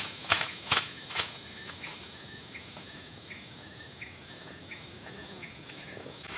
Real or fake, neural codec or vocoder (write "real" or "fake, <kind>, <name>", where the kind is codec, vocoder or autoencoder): fake, autoencoder, DAC-VAE